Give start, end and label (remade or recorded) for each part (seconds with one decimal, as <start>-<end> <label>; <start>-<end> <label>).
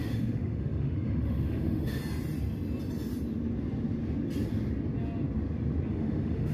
0.0-2.0 remade; 2.0-5.9 recorded; 5.9-6.5 remade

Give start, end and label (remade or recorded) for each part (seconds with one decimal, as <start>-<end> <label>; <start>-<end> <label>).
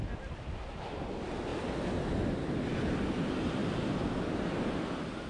0.0-5.3 recorded